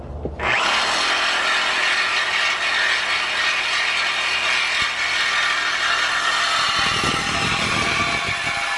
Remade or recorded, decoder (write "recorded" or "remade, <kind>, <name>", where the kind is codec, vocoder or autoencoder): recorded